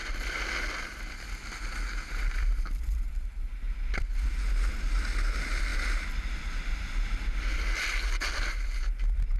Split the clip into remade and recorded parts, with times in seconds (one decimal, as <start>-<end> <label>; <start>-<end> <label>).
0.0-9.4 recorded